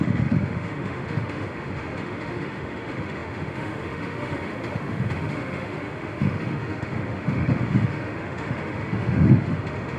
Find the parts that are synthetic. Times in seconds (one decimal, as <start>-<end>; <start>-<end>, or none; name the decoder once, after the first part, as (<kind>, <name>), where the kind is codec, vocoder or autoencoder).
0.0-10.0 (autoencoder, DAC-VAE)